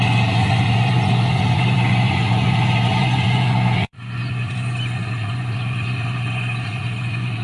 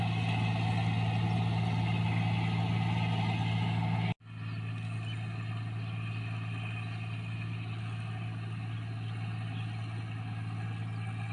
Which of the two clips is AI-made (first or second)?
first